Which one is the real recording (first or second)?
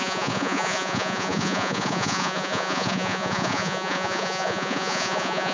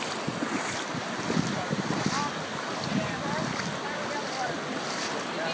second